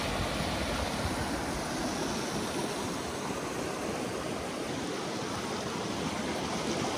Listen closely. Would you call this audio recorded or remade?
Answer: recorded